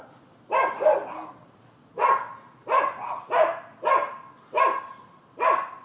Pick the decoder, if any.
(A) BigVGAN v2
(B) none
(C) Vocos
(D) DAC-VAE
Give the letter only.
B